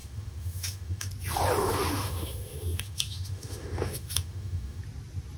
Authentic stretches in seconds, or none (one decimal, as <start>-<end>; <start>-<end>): 1.1-1.6; 4.8-5.4